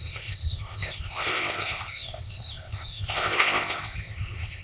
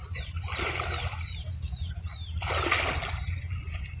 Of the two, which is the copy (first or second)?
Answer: first